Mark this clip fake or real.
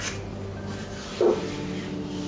real